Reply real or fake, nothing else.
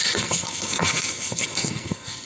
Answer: fake